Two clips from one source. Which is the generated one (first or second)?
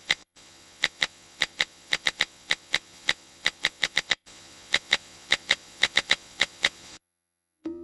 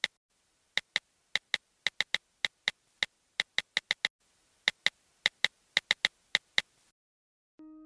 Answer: first